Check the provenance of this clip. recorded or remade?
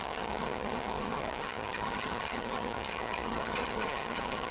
remade